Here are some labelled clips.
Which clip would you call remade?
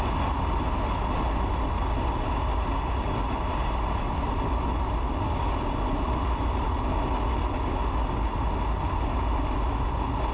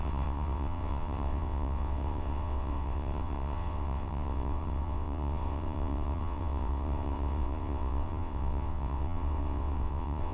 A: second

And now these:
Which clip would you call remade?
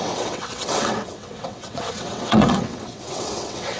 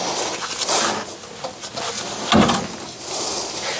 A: first